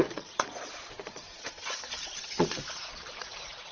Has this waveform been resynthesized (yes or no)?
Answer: yes